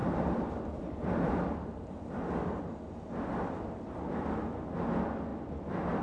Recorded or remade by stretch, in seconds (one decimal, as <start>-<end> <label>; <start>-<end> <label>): 0.0-2.6 remade; 2.6-5.3 recorded; 5.3-6.0 remade